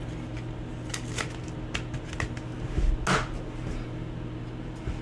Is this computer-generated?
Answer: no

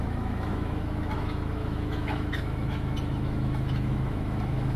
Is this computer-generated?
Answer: yes